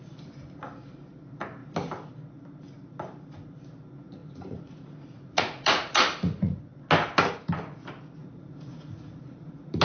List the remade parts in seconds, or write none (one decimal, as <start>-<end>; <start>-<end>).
4.2-6.6; 8.2-9.8